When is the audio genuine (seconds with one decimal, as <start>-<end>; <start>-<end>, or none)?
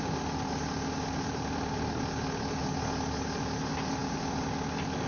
0.0-5.1